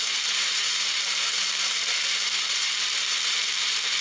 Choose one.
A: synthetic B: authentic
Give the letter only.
A